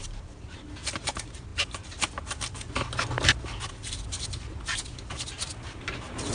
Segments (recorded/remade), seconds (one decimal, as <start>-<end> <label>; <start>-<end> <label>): 0.0-6.3 recorded